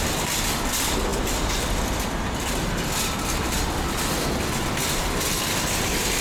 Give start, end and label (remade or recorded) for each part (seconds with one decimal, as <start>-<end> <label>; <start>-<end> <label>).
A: 0.0-6.2 recorded